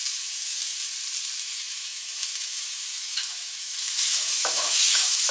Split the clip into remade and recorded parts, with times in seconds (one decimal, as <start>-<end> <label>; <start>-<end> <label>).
0.0-0.6 remade; 0.6-1.4 recorded; 1.4-5.3 remade